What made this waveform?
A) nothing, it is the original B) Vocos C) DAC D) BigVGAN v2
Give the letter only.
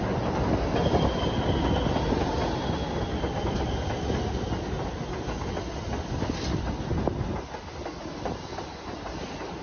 A